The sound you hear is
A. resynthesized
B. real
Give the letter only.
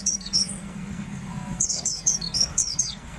A